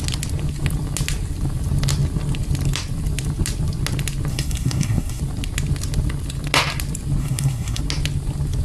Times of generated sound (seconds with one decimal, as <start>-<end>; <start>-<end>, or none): 4.3-5.2; 7.2-7.8